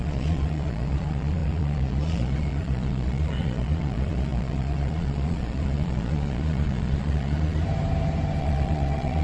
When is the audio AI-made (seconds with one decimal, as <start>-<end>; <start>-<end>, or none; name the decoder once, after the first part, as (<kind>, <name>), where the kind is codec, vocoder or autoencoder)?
0.0-7.6 (vocoder, Vocos); 8.4-9.2

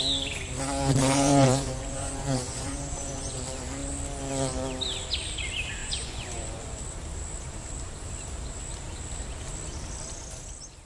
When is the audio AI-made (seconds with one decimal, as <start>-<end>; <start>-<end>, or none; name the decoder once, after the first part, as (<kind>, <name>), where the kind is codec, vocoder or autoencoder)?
1.0-3.4 (vocoder, Vocos); 5.8-6.8

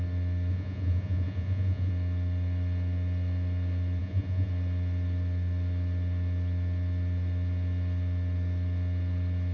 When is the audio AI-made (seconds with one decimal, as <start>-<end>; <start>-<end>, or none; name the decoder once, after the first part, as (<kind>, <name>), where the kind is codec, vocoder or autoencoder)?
0.5-1.9 (vocoder, Vocos); 4.0-4.5

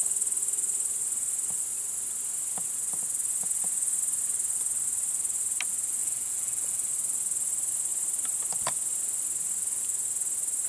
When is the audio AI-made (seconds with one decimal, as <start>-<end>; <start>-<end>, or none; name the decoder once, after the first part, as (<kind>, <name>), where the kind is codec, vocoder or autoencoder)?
6.0-6.9 (vocoder, Vocos)

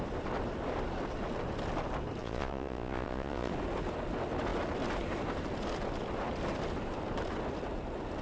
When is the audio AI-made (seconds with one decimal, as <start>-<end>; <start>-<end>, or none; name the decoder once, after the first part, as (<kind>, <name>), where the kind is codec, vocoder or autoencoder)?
2.2-3.5 (vocoder, Vocos)